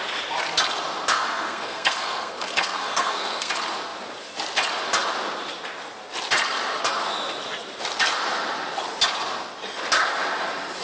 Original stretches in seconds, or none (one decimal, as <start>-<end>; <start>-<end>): 0.0-1.1; 3.5-10.8